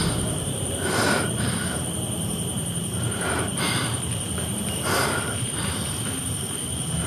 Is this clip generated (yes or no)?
yes